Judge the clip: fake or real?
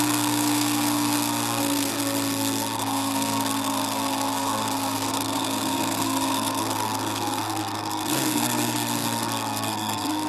fake